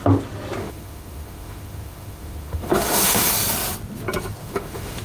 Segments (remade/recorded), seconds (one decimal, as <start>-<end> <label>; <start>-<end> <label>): 0.0-0.6 recorded; 0.6-3.3 remade; 3.3-4.4 recorded; 4.4-5.0 remade